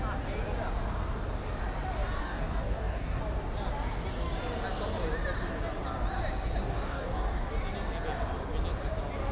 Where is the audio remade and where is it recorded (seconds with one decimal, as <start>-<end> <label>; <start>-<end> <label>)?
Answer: 0.0-2.2 recorded; 2.2-3.2 remade; 3.2-6.6 recorded; 6.6-7.5 remade; 7.5-9.3 recorded